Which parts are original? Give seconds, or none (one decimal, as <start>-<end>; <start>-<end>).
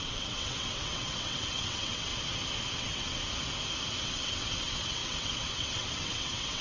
2.1-2.7; 3.2-4.0